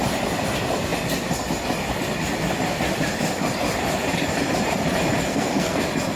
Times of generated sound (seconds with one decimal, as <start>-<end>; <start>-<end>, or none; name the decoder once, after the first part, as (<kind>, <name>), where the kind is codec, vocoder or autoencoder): 5.3-5.8 (codec, SNAC)